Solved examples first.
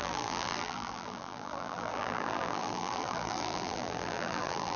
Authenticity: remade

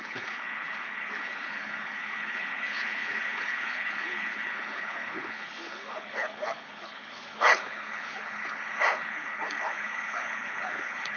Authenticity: remade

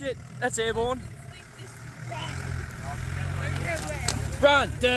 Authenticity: recorded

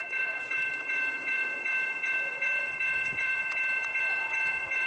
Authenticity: remade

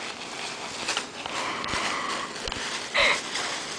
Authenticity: recorded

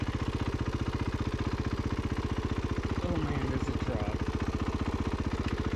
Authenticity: recorded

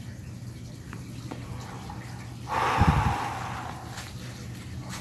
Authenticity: recorded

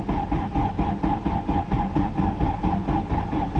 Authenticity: recorded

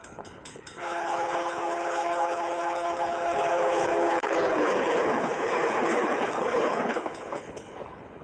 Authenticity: remade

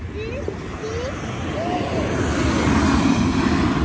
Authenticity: recorded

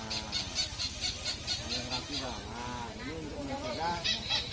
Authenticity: recorded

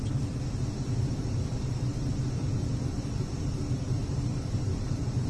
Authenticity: remade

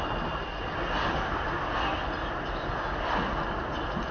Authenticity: recorded